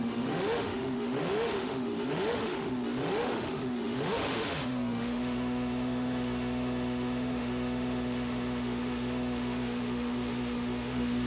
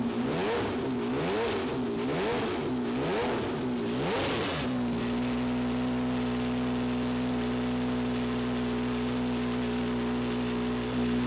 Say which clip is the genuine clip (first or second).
second